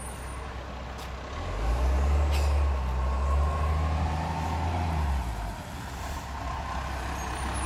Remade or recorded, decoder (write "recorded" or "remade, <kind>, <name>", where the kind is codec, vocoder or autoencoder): recorded